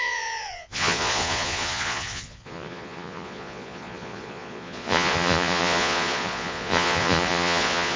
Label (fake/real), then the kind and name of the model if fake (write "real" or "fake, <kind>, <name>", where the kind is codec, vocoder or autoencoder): fake, vocoder, Vocos